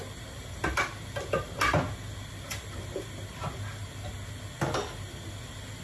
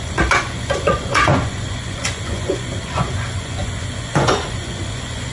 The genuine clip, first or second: first